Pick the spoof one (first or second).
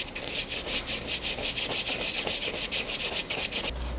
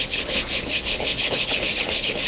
second